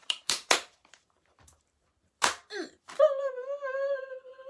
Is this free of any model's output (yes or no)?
no